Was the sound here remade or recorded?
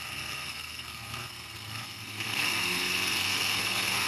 remade